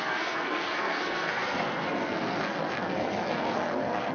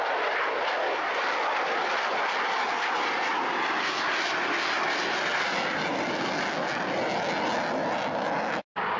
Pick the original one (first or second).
second